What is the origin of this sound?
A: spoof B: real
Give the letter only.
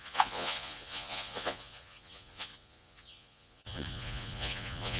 A